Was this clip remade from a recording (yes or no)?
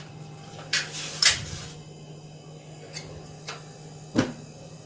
no